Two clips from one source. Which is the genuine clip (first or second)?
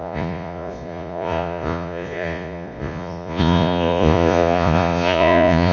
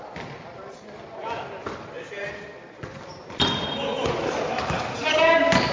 second